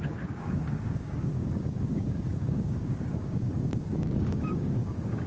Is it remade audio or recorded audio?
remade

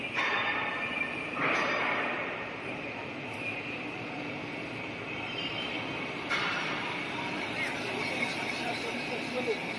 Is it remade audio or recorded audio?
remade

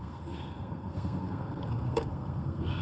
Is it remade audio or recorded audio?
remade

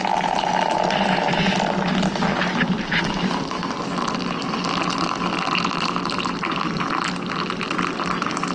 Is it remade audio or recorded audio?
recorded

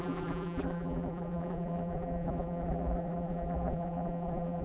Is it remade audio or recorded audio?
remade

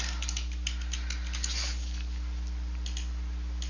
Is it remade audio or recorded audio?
recorded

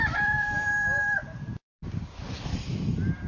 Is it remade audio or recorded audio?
remade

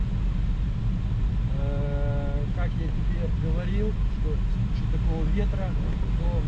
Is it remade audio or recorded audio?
recorded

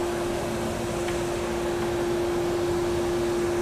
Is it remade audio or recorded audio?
recorded